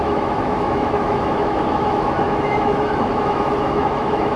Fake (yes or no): yes